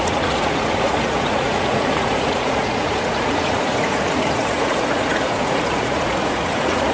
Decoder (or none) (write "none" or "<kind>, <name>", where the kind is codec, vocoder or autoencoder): vocoder, Vocos